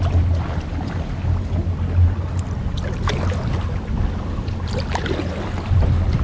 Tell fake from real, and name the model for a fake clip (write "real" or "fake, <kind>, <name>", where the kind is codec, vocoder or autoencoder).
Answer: real